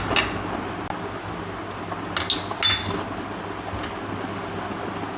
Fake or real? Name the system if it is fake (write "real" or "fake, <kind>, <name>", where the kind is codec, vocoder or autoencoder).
real